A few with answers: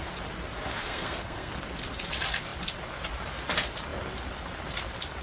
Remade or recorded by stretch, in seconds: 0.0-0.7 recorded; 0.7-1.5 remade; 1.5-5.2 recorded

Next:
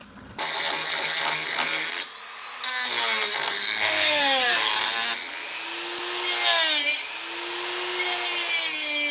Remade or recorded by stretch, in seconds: 0.0-3.6 recorded; 3.6-4.7 remade; 4.7-9.1 recorded

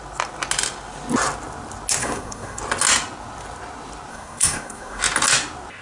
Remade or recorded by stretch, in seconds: 0.0-2.0 recorded; 2.0-2.6 remade; 2.6-4.1 recorded; 4.1-5.0 remade; 5.0-5.8 recorded

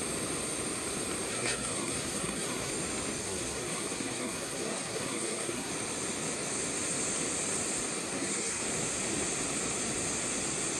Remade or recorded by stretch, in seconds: 0.0-1.3 recorded; 1.3-2.7 remade; 2.7-3.2 recorded; 3.2-5.7 remade; 5.7-8.1 recorded; 8.1-8.6 remade; 8.6-10.8 recorded

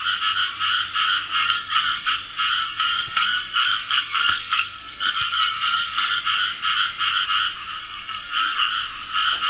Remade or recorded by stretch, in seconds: 0.0-1.4 recorded; 1.4-2.1 remade; 2.1-2.6 recorded; 2.6-6.2 remade; 6.2-7.8 recorded; 7.8-8.7 remade; 8.7-9.5 recorded

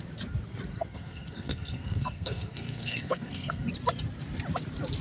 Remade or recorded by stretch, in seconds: 0.0-0.7 recorded; 0.7-3.7 remade; 3.7-5.0 recorded

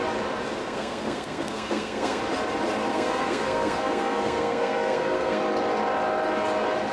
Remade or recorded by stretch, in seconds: 0.0-0.6 recorded; 0.6-2.2 remade; 2.2-2.9 recorded; 2.9-5.4 remade; 5.4-6.9 recorded

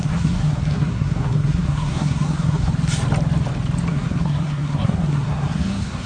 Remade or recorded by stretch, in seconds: 0.0-2.7 remade; 2.7-3.9 recorded; 3.9-6.1 remade